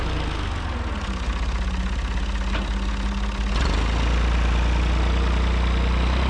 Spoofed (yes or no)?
no